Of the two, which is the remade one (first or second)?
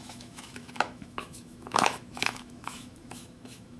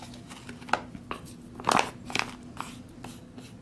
first